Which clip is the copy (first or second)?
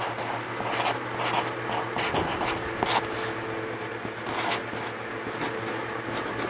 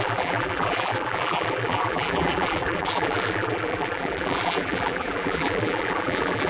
second